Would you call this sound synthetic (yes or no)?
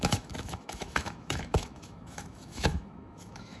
yes